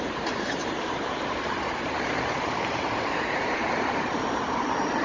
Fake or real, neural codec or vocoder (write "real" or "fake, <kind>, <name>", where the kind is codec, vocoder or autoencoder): fake, vocoder, BigVGAN v2